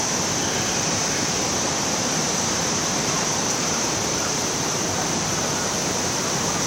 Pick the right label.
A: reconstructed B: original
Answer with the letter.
A